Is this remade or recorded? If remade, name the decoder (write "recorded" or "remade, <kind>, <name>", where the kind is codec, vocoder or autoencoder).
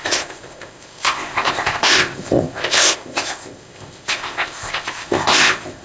remade, codec, ZipCodec